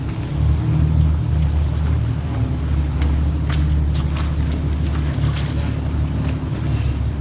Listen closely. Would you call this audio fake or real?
real